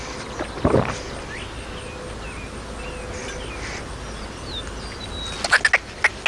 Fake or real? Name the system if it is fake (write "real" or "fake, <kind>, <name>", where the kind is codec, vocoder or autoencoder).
real